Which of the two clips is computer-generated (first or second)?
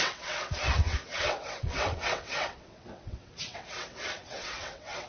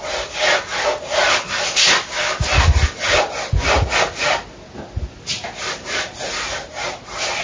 first